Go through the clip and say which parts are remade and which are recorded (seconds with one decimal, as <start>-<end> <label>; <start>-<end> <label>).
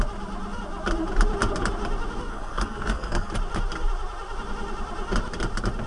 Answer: 0.0-2.3 recorded; 2.3-3.3 remade; 3.3-5.9 recorded